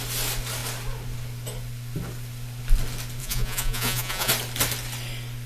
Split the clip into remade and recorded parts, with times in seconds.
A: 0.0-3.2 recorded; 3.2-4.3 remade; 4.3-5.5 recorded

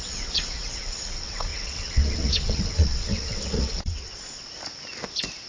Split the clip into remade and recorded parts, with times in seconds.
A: 0.0-4.1 remade; 4.1-5.5 recorded

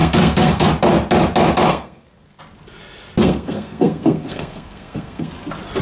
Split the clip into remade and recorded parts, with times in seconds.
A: 0.0-0.7 remade; 0.7-1.7 recorded; 1.7-2.4 remade; 2.4-3.2 recorded; 3.2-5.3 remade; 5.3-5.8 recorded

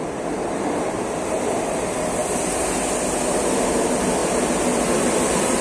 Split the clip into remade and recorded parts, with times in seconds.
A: 0.0-5.6 recorded

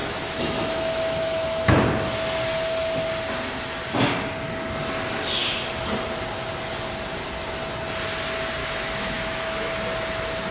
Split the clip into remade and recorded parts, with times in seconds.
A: 0.0-1.8 remade; 1.8-8.6 recorded; 8.6-9.7 remade; 9.7-10.5 recorded

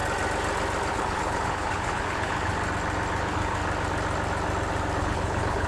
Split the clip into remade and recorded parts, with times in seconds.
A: 0.0-0.9 recorded; 0.9-2.5 remade; 2.5-3.2 recorded; 3.2-3.6 remade; 3.6-5.0 recorded; 5.0-5.7 remade

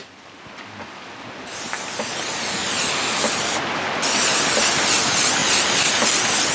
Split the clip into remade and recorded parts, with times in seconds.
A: 0.0-6.5 recorded

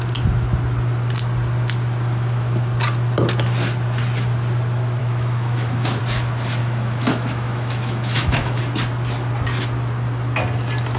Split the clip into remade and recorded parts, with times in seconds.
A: 0.0-5.0 recorded; 5.0-6.0 remade; 6.0-6.6 recorded; 6.6-8.6 remade; 8.6-11.0 recorded